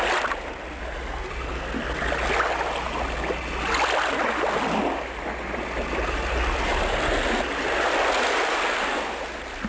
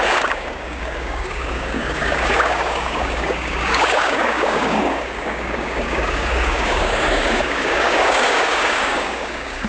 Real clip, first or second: first